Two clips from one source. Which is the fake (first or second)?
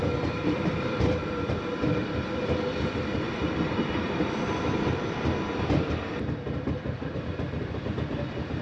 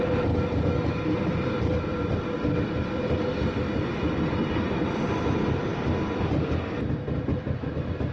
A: first